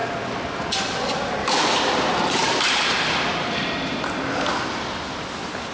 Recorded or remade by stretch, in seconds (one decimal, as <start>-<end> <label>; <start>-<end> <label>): 0.0-5.7 recorded